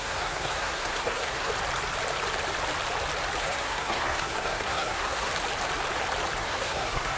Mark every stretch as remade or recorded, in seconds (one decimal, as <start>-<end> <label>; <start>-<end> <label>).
0.0-1.5 remade; 1.5-3.4 recorded; 3.4-5.3 remade; 5.3-6.4 recorded; 6.4-7.2 remade